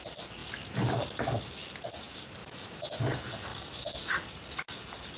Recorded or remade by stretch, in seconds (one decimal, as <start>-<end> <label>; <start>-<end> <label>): 0.0-2.4 recorded; 2.4-3.0 remade; 3.0-3.5 recorded; 3.5-4.1 remade; 4.1-5.2 recorded